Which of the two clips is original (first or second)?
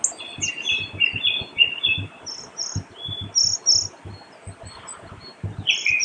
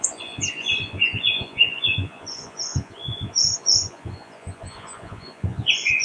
first